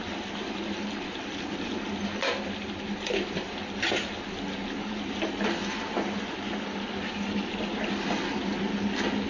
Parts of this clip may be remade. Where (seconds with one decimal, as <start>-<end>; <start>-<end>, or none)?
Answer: none